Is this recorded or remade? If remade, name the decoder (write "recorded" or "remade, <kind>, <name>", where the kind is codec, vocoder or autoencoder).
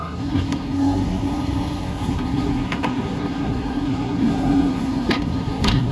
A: remade, codec, SNAC